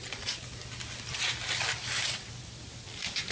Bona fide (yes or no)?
yes